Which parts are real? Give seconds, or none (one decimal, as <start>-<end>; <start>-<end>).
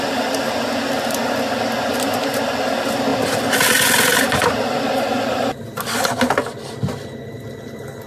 0.0-8.1